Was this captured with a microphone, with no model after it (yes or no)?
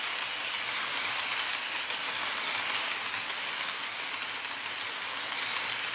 yes